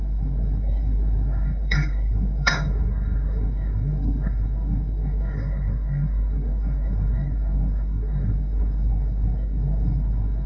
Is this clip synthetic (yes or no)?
yes